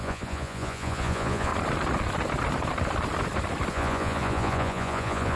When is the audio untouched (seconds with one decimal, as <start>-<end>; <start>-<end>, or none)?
1.5-3.7